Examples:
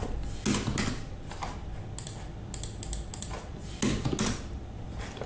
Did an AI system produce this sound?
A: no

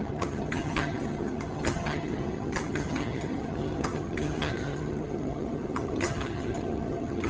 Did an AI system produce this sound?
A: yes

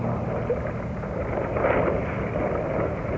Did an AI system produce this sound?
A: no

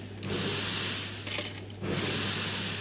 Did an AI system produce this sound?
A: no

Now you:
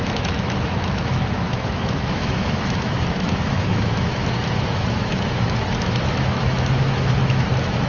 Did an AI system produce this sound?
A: yes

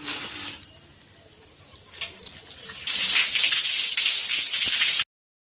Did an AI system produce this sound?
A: no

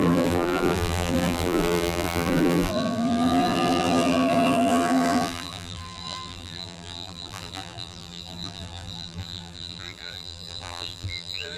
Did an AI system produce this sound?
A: yes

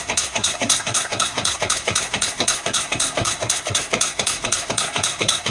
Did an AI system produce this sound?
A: yes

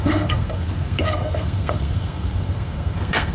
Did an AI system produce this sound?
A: yes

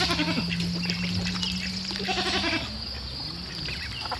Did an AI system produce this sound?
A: no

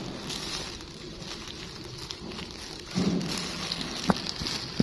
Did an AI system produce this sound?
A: no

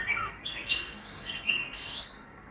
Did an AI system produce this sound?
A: yes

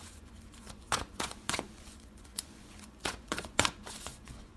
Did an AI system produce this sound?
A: yes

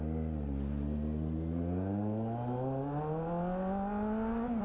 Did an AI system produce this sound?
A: no